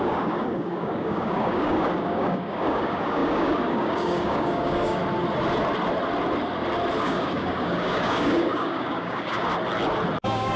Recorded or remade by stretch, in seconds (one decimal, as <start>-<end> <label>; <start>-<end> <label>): 0.0-5.0 remade; 5.0-7.0 recorded; 7.0-9.5 remade; 9.5-10.2 recorded; 10.2-10.6 remade